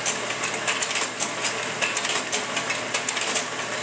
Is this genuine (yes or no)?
yes